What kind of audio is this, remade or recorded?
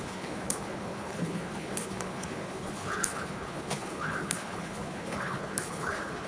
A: remade